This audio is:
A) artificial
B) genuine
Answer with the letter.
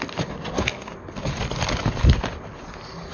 B